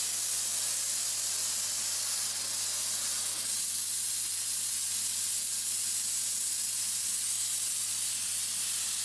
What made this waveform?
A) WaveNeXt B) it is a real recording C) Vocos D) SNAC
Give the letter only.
B